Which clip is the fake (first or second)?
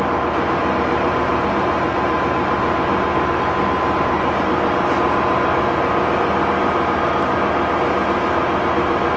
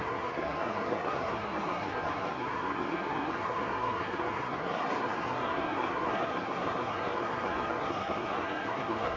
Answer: second